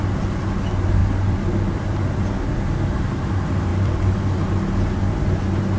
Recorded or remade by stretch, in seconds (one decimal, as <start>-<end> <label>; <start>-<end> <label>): 0.0-1.0 recorded; 1.0-2.6 remade; 2.6-3.7 recorded; 3.7-4.2 remade; 4.2-5.8 recorded